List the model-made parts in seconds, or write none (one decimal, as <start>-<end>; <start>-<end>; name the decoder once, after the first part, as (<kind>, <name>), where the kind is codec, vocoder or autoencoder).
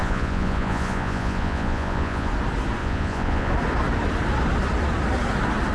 0.0-2.3 (vocoder, Vocos); 2.8-3.5